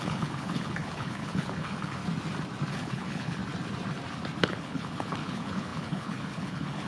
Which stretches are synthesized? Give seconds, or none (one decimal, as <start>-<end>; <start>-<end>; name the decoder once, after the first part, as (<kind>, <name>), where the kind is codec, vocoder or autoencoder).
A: 0.0-2.0 (codec, HILCodec); 2.7-3.4; 4.4-6.9